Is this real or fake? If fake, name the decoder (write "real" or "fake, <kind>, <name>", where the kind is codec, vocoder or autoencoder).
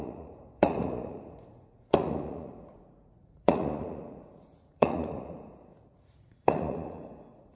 fake, vocoder, Vocos